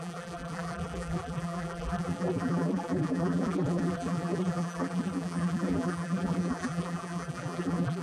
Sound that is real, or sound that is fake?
fake